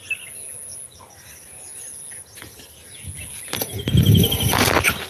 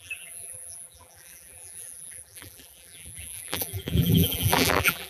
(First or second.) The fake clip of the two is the second